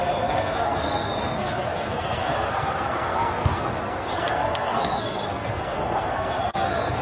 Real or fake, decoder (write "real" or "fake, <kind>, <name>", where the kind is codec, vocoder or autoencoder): fake, codec, SNAC